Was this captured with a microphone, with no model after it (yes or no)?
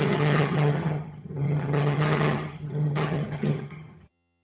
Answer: no